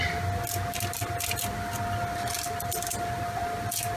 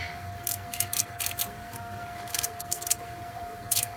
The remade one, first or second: second